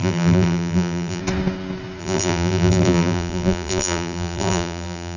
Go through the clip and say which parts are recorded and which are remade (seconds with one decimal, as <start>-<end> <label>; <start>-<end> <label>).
0.0-1.2 remade; 1.2-2.0 recorded; 2.0-5.2 remade